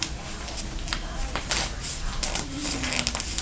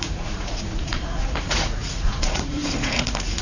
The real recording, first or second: first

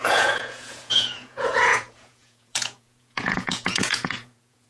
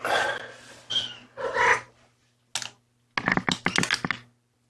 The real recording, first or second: second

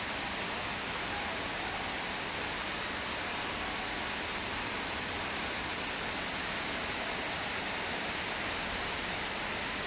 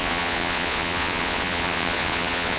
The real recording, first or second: first